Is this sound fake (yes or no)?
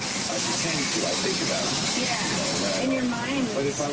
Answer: no